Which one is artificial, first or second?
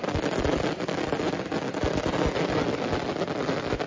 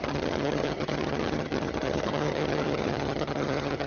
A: second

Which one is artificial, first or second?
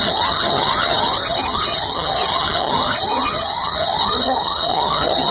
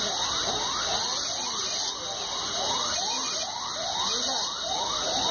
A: first